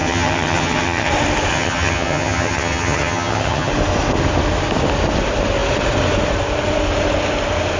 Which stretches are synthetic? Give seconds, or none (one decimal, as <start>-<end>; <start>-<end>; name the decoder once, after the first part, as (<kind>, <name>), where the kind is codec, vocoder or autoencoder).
0.0-1.1 (vocoder, HiFi-GAN); 1.5-3.7